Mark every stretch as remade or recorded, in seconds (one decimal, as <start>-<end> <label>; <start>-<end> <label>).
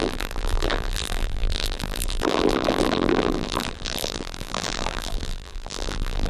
0.0-6.3 remade